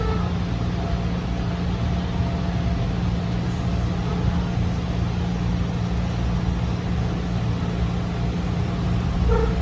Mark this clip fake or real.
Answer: real